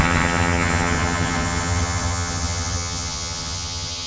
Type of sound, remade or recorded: remade